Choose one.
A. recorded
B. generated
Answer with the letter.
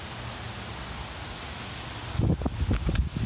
A